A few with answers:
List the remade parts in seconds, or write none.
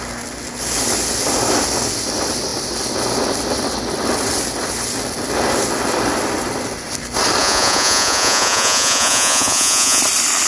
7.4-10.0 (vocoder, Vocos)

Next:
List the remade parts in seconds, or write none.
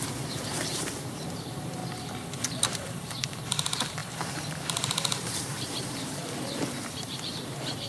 0.0-1.8 (vocoder, BigVGAN v2); 2.6-6.2; 6.9-7.9